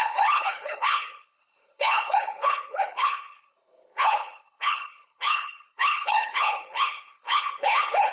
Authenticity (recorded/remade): remade